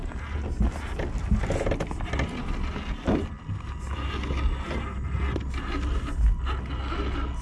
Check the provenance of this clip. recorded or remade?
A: recorded